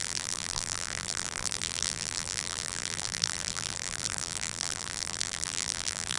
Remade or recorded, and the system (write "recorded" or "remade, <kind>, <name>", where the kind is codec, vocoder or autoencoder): remade, vocoder, BigVGAN v2